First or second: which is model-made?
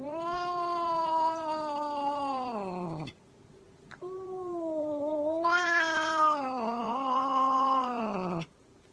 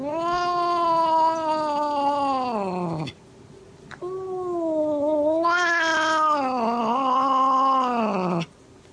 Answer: first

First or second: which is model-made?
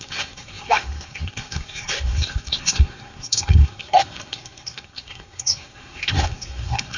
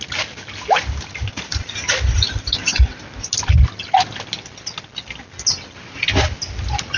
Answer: first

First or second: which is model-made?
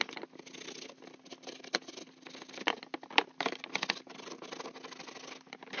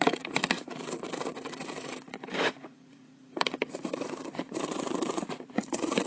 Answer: second